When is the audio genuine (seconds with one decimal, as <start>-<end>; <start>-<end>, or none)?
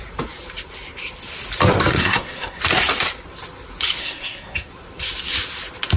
0.0-1.9; 2.6-4.0; 4.7-6.0